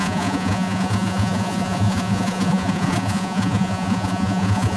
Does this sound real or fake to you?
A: fake